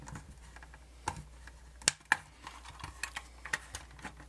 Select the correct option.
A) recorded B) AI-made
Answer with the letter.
A